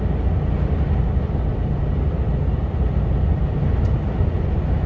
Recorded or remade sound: recorded